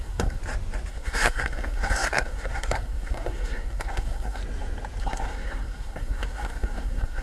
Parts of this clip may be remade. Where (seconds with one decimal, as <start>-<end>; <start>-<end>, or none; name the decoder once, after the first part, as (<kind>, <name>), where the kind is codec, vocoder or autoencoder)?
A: 0.0-0.4 (codec, SNAC); 0.9-4.4; 5.0-7.2